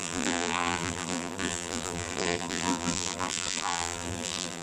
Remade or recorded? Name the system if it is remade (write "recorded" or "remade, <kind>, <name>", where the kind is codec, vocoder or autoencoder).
remade, vocoder, BigVGAN v2